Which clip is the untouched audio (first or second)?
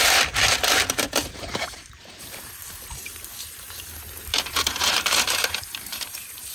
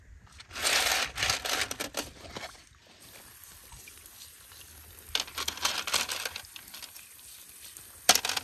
second